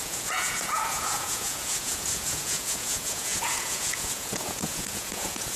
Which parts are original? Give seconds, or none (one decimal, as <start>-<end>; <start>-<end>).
none